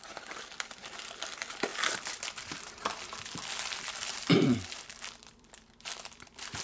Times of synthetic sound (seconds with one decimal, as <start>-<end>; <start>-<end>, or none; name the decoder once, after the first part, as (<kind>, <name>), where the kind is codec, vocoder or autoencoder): 0.0-6.6 (vocoder, BigVGAN v2)